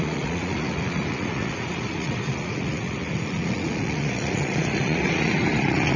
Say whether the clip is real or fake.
fake